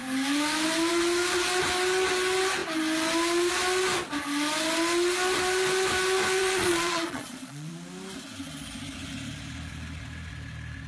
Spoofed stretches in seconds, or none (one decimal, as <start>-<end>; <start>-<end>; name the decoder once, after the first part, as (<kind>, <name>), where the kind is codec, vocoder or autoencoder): 6.4-7.7 (vocoder, Vocos)